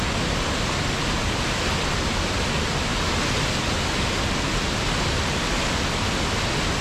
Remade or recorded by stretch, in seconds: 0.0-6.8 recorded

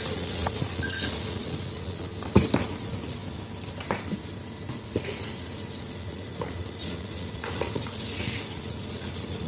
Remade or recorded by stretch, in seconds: 0.0-2.1 remade; 2.1-2.7 recorded; 2.7-3.2 remade; 3.2-4.7 recorded; 4.7-9.5 remade

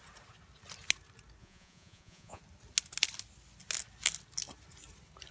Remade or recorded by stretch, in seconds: 0.0-1.4 recorded; 1.4-2.4 remade; 2.4-5.3 recorded